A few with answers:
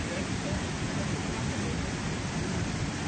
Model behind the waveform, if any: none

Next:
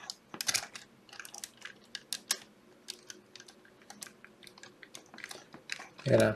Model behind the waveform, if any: none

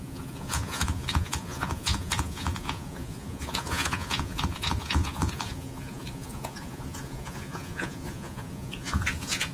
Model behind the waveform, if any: vocoder, Vocos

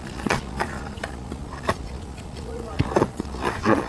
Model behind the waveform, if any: vocoder, Vocos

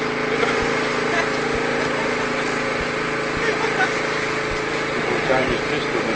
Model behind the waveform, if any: none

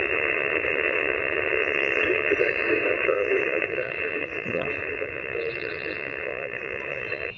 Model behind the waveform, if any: vocoder, WaveNeXt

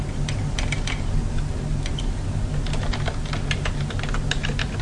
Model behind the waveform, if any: none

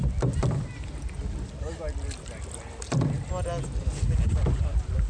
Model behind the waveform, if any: none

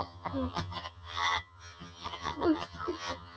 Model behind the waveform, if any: vocoder, HiFi-GAN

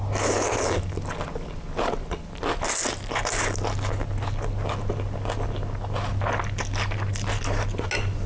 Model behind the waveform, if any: none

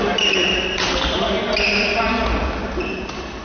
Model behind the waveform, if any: none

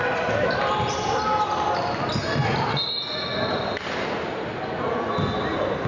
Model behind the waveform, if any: none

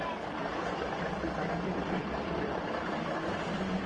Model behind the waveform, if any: vocoder, BigVGAN v2